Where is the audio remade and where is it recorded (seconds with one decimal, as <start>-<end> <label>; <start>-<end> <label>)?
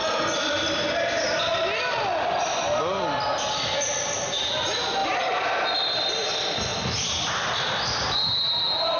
0.0-0.8 remade; 0.8-5.0 recorded; 5.0-6.1 remade; 6.1-6.7 recorded; 6.7-7.3 remade; 7.3-9.0 recorded